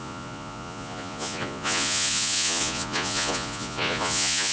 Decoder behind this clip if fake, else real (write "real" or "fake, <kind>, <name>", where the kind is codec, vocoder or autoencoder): fake, vocoder, Vocos